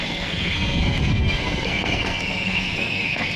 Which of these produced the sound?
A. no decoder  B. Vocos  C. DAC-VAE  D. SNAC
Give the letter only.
D